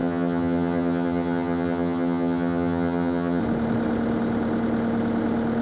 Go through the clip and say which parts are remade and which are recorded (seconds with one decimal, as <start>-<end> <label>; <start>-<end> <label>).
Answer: 0.0-3.4 remade; 3.4-5.6 recorded